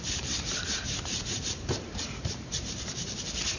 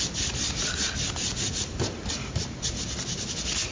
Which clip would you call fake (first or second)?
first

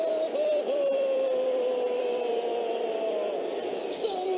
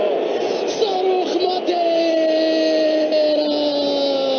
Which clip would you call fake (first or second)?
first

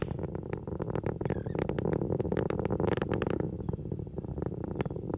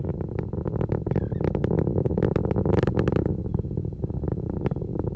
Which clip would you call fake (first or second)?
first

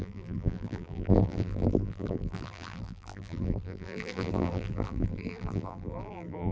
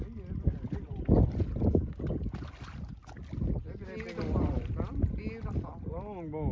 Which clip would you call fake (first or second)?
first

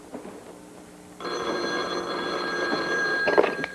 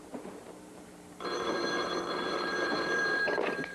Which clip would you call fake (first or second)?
second